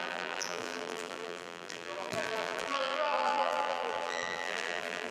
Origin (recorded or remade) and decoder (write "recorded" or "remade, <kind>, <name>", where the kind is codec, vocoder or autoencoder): remade, vocoder, BigVGAN v2